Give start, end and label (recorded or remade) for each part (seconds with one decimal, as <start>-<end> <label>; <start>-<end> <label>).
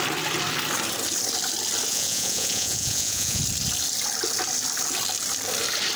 0.0-1.9 recorded; 1.9-3.4 remade; 3.4-6.0 recorded